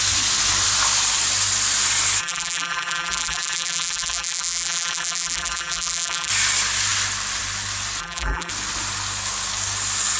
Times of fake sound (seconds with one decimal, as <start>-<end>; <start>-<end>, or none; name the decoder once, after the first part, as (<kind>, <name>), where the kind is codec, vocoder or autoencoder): 2.2-6.3 (vocoder, BigVGAN v2); 8.0-8.5